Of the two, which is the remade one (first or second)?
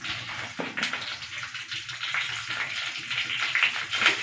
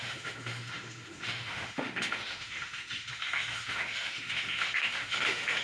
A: second